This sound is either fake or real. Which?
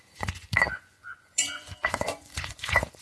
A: fake